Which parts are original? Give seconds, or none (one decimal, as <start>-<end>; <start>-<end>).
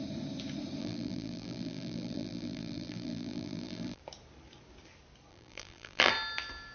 0.0-0.8; 4.0-5.3; 6.1-6.7